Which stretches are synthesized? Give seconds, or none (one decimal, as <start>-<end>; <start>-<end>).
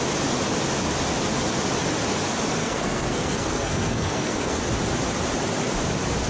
2.6-4.6